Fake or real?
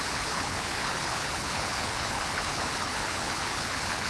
fake